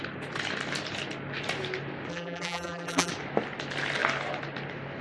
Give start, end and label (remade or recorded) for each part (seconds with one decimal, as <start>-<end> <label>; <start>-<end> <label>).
0.0-2.1 recorded; 2.1-3.1 remade; 3.1-5.0 recorded

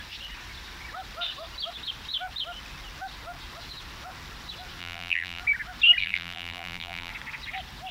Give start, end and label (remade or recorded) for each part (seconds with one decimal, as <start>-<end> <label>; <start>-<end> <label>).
0.0-4.8 recorded; 4.8-5.4 remade; 5.4-6.0 recorded; 6.0-7.1 remade; 7.1-7.9 recorded

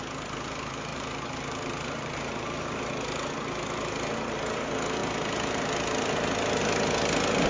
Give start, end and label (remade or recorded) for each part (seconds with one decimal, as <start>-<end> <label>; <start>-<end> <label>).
0.0-0.9 recorded; 0.9-2.9 remade; 2.9-7.5 recorded

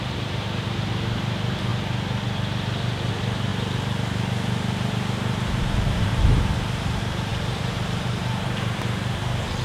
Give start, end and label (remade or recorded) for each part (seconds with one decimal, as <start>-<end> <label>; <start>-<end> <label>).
0.0-1.7 remade; 1.7-3.1 recorded; 3.1-9.6 remade

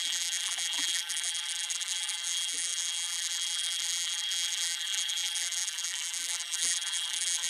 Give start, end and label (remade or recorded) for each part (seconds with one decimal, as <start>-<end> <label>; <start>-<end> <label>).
0.0-7.5 remade

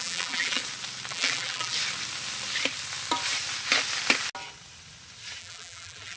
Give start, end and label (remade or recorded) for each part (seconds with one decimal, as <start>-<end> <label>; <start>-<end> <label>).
0.0-0.6 remade; 0.6-1.1 recorded; 1.1-1.7 remade; 1.7-5.4 recorded; 5.4-6.2 remade